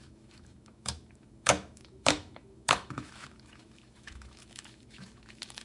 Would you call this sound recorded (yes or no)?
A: no